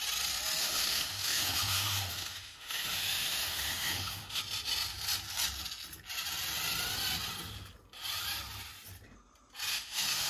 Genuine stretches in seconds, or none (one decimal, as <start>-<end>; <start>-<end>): 0.0-0.6; 4.4-9.7